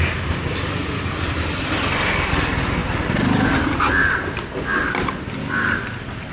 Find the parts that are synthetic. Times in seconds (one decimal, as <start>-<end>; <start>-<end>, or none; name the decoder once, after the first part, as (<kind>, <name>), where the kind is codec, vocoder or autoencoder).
none